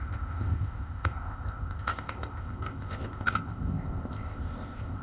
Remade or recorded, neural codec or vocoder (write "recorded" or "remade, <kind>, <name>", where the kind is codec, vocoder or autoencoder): remade, codec, ZipCodec